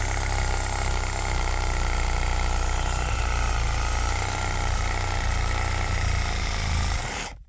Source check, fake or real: real